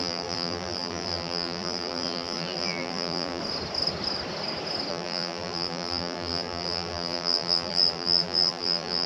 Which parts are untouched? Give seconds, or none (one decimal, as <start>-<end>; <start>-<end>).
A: 3.4-4.9